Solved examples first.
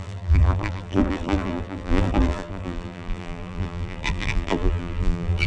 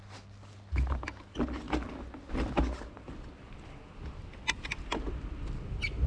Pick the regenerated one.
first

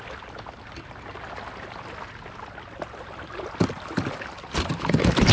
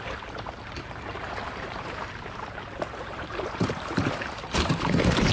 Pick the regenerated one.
second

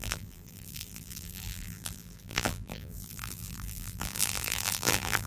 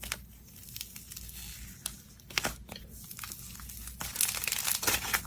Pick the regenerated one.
first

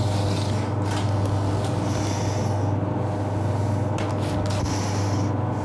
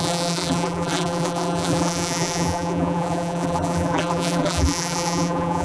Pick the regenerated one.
second